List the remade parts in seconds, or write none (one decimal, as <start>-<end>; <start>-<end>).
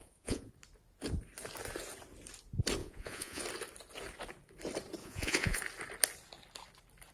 0.0-0.5; 2.8-3.4; 5.0-5.6